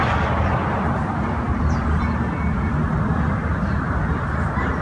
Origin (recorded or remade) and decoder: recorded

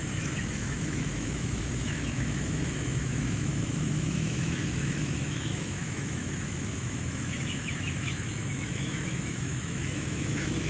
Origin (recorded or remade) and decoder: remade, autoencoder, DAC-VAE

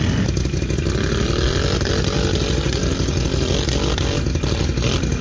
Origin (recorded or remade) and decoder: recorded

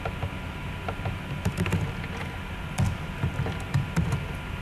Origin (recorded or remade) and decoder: recorded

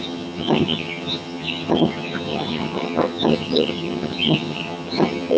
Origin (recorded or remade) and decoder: remade, vocoder, HiFi-GAN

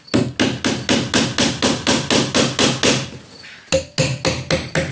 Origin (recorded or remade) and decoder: recorded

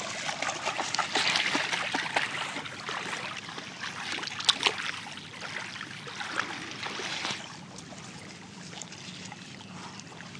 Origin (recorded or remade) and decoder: recorded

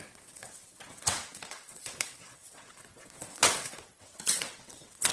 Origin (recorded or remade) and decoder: remade, vocoder, WaveNeXt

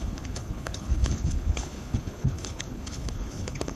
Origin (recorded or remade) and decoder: remade, codec, HILCodec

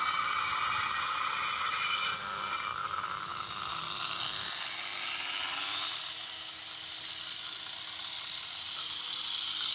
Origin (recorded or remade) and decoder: recorded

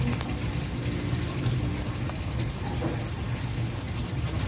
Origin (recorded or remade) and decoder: recorded